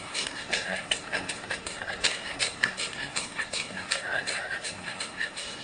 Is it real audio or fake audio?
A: fake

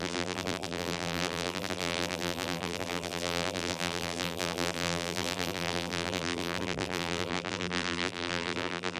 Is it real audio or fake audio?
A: fake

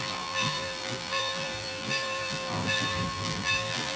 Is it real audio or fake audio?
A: fake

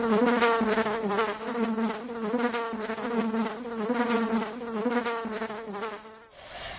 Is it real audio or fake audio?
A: real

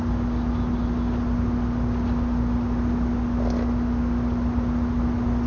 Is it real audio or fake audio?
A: real